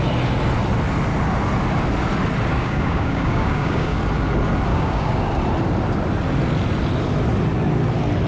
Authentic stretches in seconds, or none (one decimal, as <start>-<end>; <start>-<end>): 0.0-2.5; 4.0-4.7; 5.2-8.3